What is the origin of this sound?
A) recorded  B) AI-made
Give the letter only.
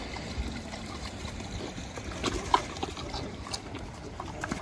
A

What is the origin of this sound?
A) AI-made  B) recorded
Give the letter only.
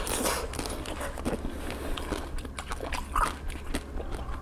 B